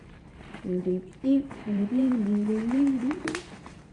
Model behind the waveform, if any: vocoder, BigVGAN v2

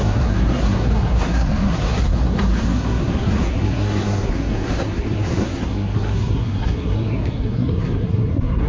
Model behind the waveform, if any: codec, SNAC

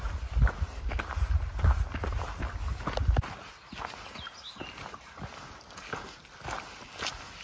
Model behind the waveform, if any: none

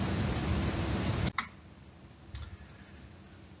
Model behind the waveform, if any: vocoder, BigVGAN v2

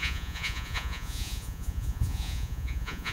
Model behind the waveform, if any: vocoder, Vocos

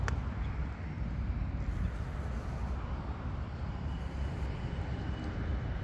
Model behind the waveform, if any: none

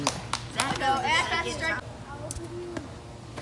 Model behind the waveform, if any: none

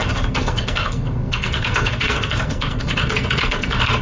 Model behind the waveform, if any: codec, SNAC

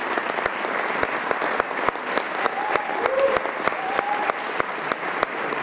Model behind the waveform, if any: none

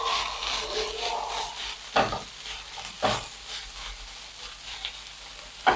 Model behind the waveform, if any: none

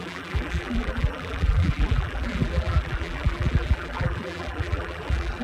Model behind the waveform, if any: vocoder, BigVGAN v2